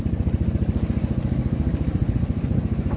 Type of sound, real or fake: real